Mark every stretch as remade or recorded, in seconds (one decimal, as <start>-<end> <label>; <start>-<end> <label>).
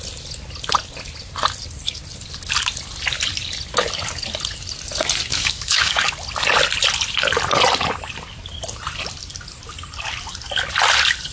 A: 0.0-5.3 recorded; 5.3-6.1 remade; 6.1-11.3 recorded